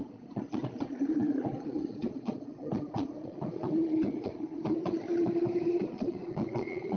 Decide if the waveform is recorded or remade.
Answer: remade